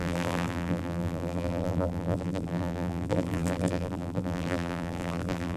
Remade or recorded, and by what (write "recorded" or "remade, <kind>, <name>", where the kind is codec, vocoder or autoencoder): remade, vocoder, BigVGAN v2